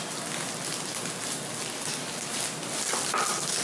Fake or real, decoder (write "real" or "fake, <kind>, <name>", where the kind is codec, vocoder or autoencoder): real